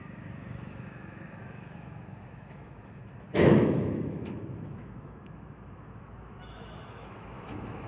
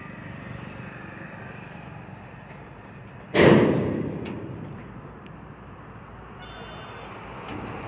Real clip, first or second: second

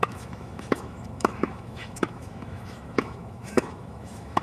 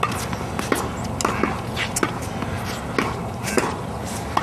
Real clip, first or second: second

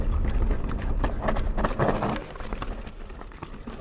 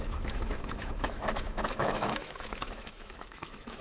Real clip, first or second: first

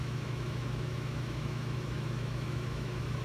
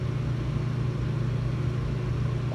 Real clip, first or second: second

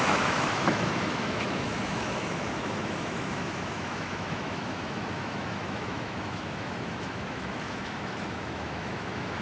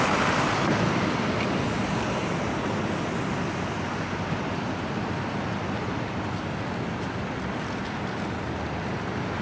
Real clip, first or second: second